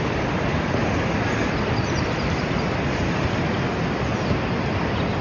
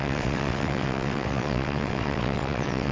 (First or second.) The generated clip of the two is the second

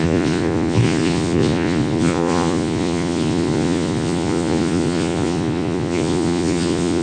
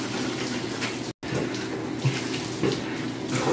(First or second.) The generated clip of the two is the first